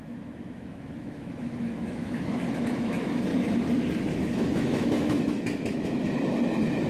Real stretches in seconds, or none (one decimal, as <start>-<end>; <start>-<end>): 3.3-4.2; 6.0-6.9